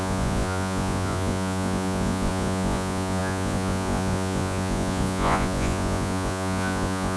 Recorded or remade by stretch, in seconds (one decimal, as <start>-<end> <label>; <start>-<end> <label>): 0.0-7.2 remade